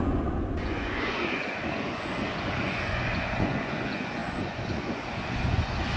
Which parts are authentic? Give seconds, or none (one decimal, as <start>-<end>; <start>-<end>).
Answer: none